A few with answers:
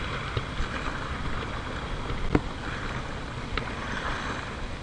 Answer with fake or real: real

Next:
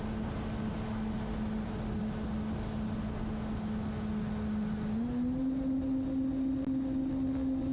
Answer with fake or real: real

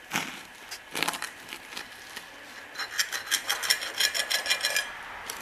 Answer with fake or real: real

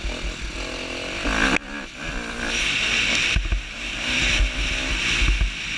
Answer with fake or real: real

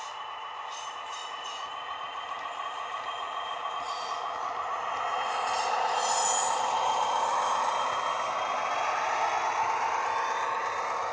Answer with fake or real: real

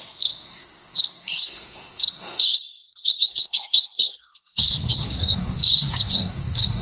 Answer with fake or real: fake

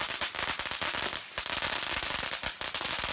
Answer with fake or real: real